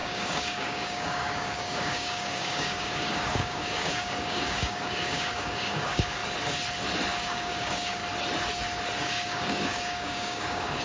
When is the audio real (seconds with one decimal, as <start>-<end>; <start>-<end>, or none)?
6.2-7.1; 8.0-9.0